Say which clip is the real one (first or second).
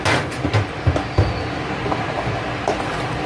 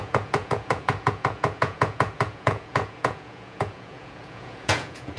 first